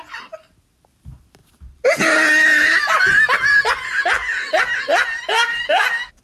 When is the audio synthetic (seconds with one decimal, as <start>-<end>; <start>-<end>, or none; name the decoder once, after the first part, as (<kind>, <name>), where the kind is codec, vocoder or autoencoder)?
none